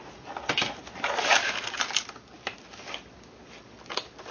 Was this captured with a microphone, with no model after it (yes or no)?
yes